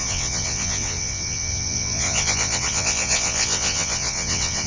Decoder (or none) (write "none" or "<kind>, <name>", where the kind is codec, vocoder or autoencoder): vocoder, WaveNeXt